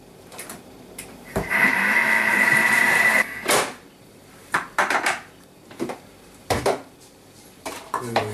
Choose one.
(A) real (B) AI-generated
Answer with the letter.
B